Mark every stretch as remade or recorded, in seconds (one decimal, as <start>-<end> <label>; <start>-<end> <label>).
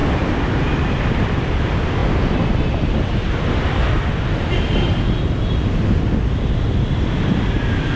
0.0-8.0 remade